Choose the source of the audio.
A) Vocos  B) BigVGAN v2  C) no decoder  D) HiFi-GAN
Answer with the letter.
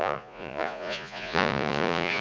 A